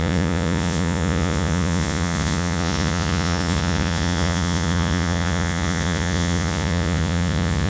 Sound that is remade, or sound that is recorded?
remade